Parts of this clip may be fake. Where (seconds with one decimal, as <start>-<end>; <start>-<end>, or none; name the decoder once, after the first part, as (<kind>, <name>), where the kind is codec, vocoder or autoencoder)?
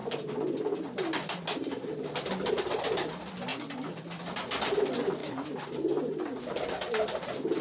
2.5-3.5 (vocoder, BigVGAN v2); 4.8-5.2; 6.4-7.6